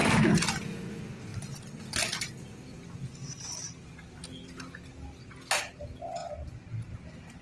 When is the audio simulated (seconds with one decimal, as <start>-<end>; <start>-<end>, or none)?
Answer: none